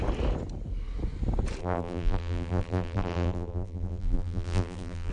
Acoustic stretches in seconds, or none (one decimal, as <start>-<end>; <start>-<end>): 0.0-1.6